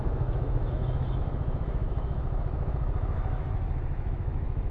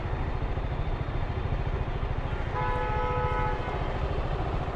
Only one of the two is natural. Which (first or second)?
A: second